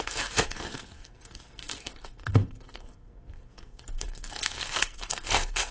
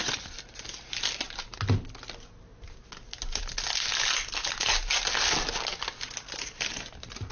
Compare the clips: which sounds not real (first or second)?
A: first